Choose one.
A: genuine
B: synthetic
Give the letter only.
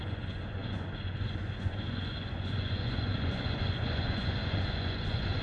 B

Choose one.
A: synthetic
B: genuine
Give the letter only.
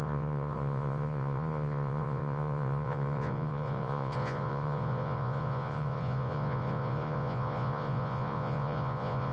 A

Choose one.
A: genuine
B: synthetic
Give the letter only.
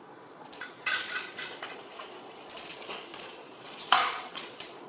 B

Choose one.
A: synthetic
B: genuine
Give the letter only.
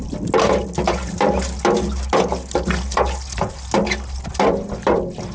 B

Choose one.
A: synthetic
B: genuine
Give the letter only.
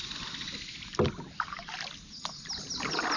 B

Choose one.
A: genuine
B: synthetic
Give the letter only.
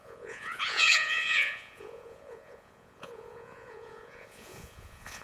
B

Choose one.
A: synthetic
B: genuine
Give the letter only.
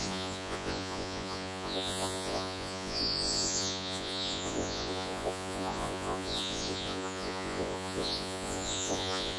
A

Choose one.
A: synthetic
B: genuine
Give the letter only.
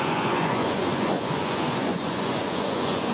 A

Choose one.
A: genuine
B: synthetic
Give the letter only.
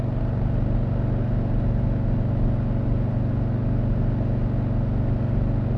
A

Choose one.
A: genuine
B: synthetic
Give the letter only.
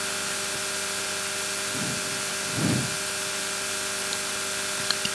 A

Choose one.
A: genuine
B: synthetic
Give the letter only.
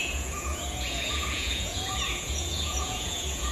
B